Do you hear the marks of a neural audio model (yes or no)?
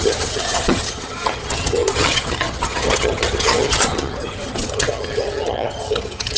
yes